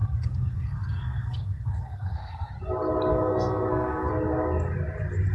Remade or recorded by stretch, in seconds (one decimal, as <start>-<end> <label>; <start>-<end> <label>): 0.0-2.5 remade; 2.5-3.1 recorded; 3.1-4.1 remade; 4.1-5.3 recorded

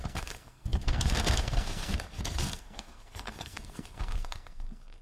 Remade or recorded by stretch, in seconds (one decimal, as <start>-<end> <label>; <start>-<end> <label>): 0.0-5.0 remade

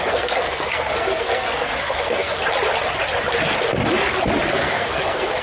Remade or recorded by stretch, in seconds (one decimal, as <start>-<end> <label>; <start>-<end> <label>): 0.0-2.4 remade; 2.4-4.5 recorded; 4.5-5.4 remade

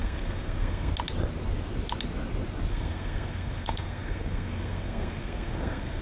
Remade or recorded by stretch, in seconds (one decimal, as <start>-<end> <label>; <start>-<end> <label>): 0.0-0.9 remade; 0.9-2.7 recorded; 2.7-6.0 remade